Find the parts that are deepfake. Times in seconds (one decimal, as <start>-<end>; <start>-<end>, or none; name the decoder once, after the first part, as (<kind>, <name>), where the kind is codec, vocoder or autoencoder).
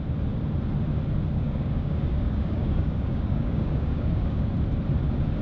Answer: 1.3-4.5 (codec, DAC)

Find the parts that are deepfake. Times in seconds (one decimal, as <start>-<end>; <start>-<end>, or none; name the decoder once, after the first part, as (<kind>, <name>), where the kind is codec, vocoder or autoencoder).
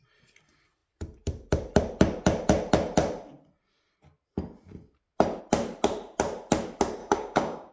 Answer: 7.0-7.7 (codec, DAC)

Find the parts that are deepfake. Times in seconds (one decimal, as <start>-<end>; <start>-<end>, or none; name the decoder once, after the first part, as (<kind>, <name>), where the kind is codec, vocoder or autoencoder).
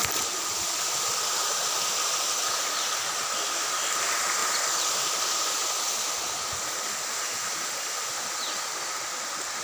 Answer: none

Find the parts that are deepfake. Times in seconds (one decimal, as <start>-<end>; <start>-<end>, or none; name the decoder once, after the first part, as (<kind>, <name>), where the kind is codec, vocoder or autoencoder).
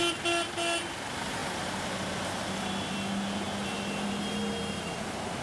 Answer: none